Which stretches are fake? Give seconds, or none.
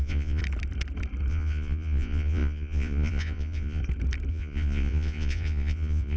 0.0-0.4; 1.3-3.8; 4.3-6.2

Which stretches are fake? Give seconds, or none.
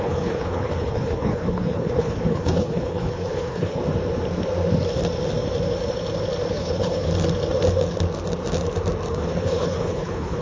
0.0-3.8; 6.5-7.1; 9.1-10.4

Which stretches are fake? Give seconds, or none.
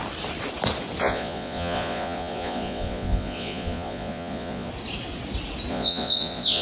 1.0-4.7; 5.7-6.6